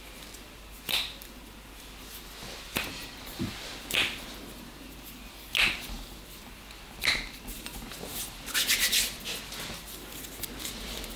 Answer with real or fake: real